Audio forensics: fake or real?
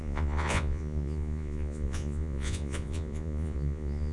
fake